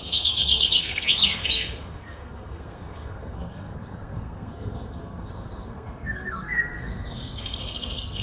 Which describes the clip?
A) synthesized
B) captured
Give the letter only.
A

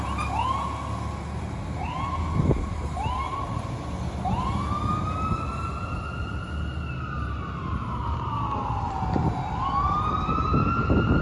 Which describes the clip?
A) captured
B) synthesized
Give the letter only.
A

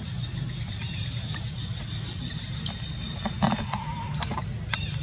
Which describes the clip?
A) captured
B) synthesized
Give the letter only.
A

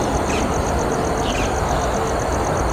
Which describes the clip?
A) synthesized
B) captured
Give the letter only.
B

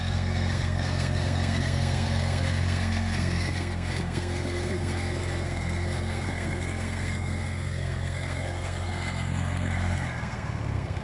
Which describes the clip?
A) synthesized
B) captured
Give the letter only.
A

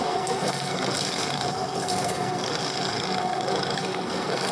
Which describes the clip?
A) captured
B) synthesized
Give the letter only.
B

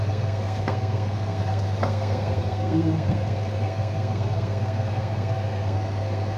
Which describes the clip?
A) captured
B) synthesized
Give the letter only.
B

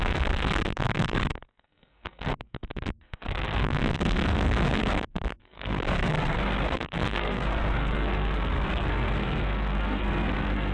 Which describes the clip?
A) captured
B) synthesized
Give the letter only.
B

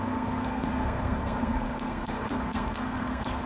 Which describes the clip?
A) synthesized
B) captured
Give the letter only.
A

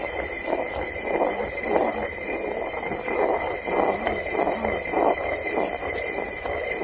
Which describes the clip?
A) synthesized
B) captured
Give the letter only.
B